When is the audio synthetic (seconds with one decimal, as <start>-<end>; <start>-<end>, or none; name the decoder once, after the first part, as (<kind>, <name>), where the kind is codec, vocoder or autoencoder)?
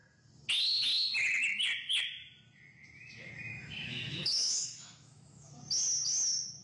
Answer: 3.5-5.5 (autoencoder, DAC-VAE)